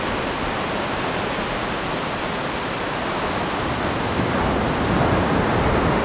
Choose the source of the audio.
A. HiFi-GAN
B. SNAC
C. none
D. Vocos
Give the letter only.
C